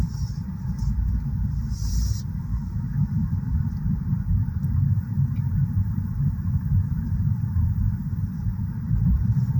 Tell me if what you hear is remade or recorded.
remade